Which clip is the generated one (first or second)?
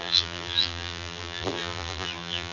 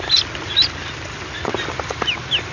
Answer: first